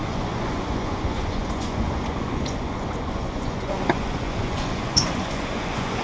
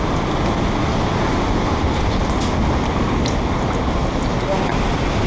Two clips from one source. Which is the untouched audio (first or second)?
second